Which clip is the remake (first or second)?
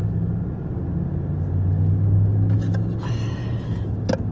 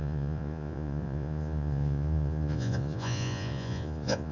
second